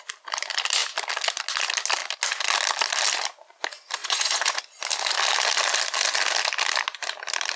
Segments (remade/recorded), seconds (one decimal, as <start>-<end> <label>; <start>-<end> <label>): 0.0-4.0 recorded; 4.0-4.6 remade; 4.6-7.6 recorded